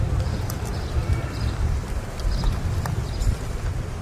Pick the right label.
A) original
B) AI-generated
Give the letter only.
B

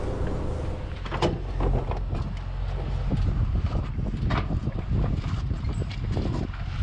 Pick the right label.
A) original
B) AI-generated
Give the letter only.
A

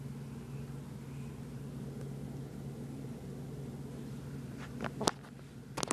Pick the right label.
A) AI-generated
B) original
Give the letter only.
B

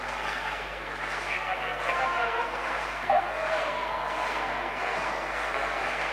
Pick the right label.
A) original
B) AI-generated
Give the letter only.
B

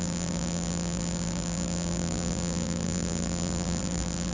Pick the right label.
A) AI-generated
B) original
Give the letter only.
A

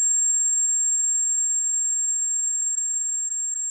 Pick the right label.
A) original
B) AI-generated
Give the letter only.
A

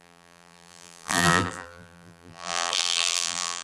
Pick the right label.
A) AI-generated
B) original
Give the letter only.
A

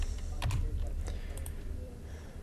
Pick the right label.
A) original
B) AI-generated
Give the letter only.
B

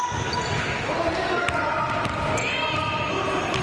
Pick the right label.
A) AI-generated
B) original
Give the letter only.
B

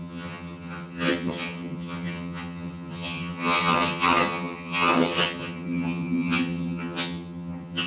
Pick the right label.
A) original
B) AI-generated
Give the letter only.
B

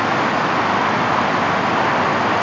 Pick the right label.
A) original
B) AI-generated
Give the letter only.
A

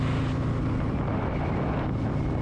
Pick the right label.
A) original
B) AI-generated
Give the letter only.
A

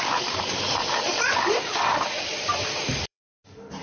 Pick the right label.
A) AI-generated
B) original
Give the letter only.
A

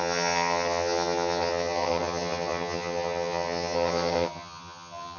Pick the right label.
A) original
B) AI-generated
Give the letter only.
B